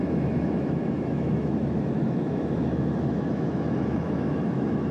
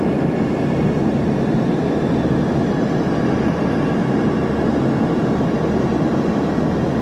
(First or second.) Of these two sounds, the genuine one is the second